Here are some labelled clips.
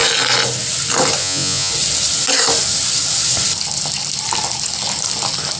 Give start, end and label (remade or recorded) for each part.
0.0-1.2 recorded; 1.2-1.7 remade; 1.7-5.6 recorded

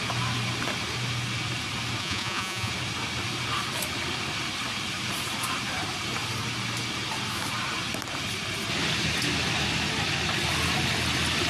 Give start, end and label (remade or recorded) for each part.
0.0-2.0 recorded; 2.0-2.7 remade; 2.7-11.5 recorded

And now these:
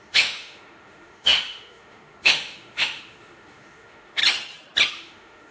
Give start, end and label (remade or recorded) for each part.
0.0-4.2 remade; 4.2-4.9 recorded; 4.9-5.5 remade

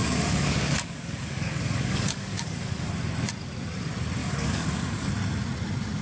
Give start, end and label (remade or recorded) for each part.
0.0-2.9 remade; 2.9-4.2 recorded; 4.2-5.1 remade; 5.1-6.0 recorded

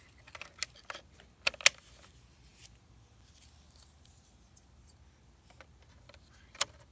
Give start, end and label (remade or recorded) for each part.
0.0-6.9 recorded

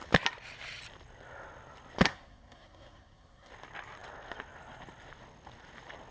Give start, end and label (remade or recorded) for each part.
0.0-2.1 recorded; 2.1-3.5 remade; 3.5-6.1 recorded

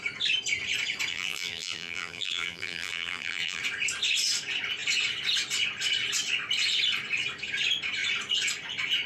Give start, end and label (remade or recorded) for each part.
0.0-1.1 recorded; 1.1-3.6 remade; 3.6-9.1 recorded